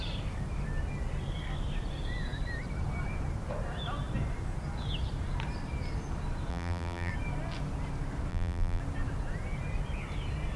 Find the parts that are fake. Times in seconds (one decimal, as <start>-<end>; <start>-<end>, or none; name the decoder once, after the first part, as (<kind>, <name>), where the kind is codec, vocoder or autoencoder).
6.5-7.1 (vocoder, BigVGAN v2); 8.3-8.8